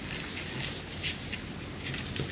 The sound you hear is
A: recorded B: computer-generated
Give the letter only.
A